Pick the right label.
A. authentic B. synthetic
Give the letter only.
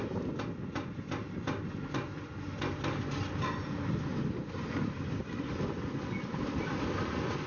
A